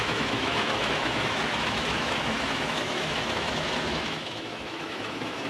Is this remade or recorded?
remade